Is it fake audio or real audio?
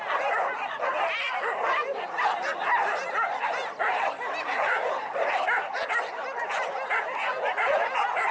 real